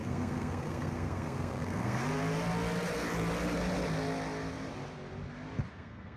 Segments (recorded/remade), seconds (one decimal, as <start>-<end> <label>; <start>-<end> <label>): 0.0-2.0 remade; 2.0-5.7 recorded; 5.7-6.2 remade